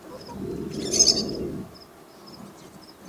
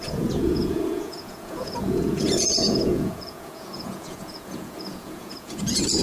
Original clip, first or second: first